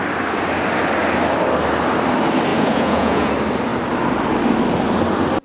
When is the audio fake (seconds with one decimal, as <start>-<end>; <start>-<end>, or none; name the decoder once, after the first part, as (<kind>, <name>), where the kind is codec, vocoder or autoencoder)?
2.5-3.3 (vocoder, Vocos)